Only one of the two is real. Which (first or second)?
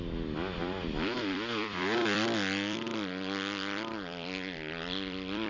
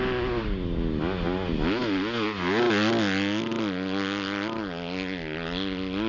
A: second